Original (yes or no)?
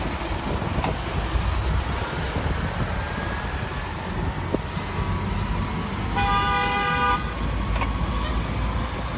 yes